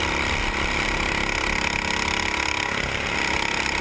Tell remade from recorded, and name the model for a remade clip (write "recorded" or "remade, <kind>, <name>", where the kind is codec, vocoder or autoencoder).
recorded